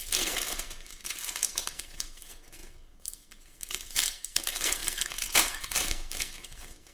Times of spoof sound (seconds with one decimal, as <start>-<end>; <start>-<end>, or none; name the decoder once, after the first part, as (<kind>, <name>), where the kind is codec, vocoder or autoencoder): 0.0-6.9 (codec, SNAC)